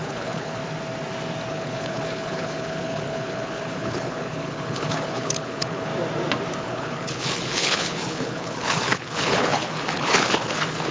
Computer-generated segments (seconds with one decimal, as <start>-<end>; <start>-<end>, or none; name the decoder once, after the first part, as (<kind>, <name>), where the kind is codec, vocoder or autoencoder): 0.0-0.6 (codec, HILCodec); 1.5-5.9; 6.6-10.9